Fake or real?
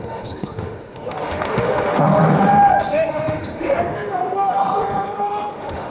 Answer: fake